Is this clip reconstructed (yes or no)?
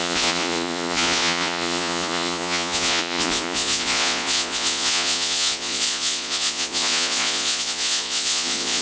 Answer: yes